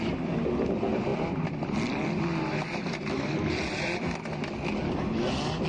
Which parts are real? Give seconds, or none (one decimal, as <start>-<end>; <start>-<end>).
0.0-1.1; 3.8-5.7